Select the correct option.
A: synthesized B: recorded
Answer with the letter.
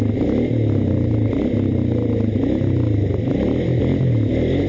B